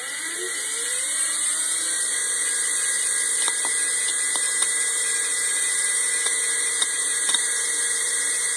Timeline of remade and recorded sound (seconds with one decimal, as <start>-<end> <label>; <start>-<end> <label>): 0.0-2.1 remade; 2.1-3.5 recorded; 3.5-8.6 remade